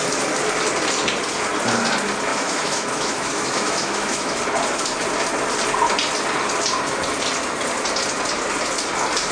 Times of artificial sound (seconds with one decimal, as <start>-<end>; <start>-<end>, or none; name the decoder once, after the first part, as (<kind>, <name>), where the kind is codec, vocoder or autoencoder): 2.3-4.4 (autoencoder, DAC-VAE)